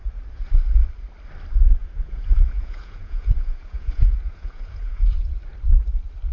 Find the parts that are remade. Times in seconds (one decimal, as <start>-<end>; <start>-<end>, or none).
1.8-5.3